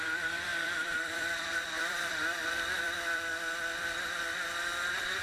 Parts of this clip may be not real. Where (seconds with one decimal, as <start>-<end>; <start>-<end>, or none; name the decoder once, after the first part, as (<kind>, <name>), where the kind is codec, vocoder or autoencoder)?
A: 0.0-3.3 (vocoder, BigVGAN v2)

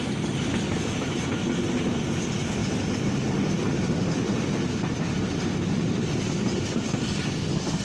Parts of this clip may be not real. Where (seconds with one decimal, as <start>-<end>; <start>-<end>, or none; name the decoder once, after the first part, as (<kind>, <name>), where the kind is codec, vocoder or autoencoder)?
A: 2.6-3.5 (vocoder, BigVGAN v2)